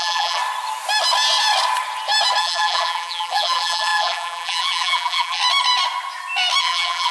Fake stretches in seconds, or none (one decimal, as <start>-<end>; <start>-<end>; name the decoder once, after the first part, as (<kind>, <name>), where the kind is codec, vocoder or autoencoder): 0.0-0.4 (vocoder, BigVGAN v2); 2.4-5.4; 6.6-7.1